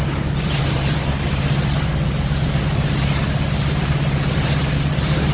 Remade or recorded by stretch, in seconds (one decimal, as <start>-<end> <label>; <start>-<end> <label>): 0.0-5.3 recorded